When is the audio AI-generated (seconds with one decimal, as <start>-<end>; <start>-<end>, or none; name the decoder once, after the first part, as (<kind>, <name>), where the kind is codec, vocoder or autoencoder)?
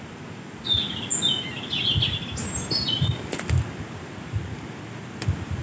none